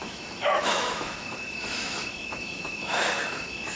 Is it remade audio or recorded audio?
remade